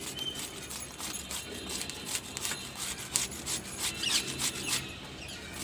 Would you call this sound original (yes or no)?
yes